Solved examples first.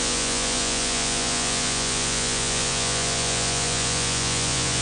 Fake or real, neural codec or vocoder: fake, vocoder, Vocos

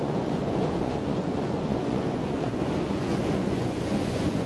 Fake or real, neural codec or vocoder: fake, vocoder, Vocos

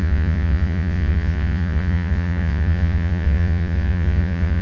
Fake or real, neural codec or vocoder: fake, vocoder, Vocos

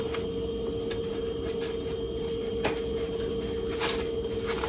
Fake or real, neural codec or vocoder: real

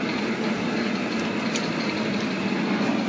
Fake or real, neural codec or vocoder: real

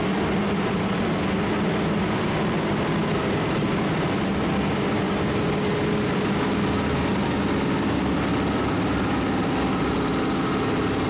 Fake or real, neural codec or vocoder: real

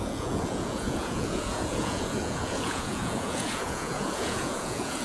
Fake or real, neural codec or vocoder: fake, vocoder, Vocos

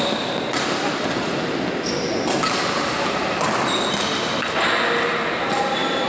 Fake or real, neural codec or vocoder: real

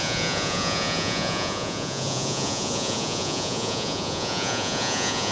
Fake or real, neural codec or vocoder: fake, vocoder, Vocos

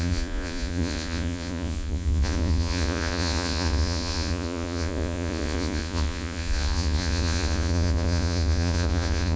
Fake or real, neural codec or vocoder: fake, vocoder, Vocos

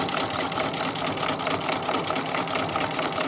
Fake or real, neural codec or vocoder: real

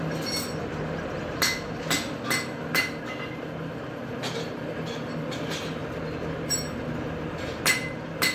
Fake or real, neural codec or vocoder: real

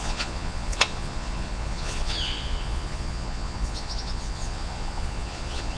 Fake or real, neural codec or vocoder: fake, vocoder, Vocos